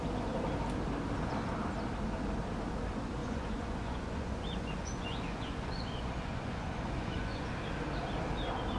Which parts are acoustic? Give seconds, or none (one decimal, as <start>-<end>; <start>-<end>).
0.0-3.2; 7.5-8.8